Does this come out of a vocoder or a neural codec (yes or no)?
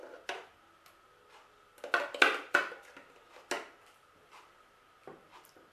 no